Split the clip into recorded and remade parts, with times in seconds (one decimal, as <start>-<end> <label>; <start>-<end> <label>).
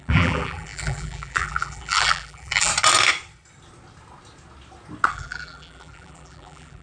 0.0-2.7 remade; 2.7-5.1 recorded; 5.1-6.8 remade